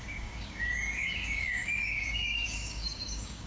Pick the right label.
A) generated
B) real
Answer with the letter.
A